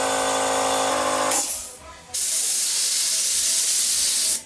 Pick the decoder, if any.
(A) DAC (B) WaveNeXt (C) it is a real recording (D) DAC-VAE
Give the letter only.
C